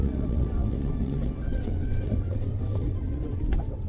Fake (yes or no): yes